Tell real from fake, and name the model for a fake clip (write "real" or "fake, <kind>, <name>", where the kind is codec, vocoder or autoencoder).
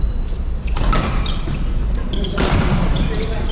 real